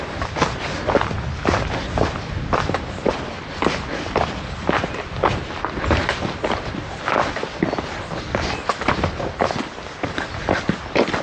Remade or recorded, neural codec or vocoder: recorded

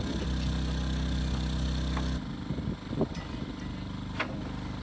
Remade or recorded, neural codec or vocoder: recorded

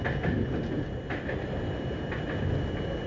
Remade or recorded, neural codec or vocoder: recorded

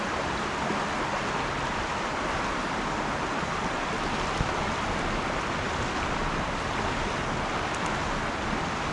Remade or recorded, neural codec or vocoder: recorded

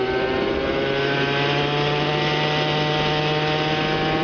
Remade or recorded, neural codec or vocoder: recorded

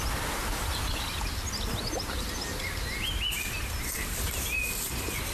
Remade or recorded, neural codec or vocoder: recorded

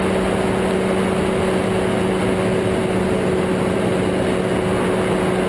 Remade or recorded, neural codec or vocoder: recorded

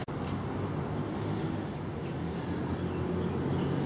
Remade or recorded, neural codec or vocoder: recorded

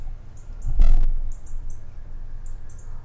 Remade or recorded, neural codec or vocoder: recorded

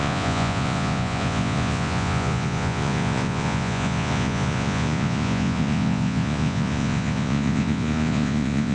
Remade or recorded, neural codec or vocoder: remade, vocoder, Vocos